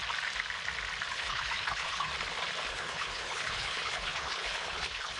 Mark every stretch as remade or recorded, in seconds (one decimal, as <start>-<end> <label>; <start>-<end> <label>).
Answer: 0.0-1.1 recorded; 1.1-2.1 remade; 2.1-2.7 recorded; 2.7-5.2 remade